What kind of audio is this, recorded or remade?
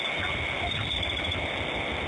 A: recorded